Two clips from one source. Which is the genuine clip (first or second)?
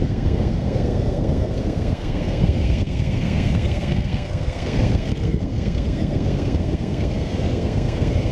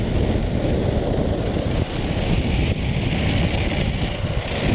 second